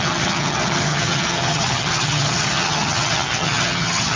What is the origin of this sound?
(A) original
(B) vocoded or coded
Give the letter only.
B